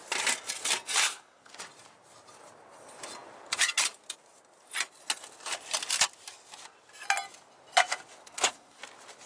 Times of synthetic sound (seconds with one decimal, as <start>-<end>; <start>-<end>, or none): 1.0-1.6; 8.2-8.8